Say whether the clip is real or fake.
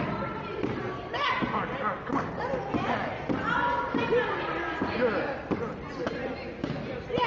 real